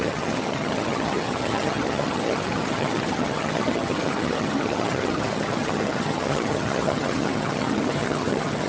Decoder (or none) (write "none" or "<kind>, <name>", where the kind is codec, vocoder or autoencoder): vocoder, HiFi-GAN